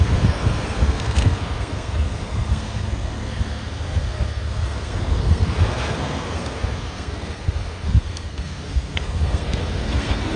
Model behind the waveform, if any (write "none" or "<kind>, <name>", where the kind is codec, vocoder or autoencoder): codec, SNAC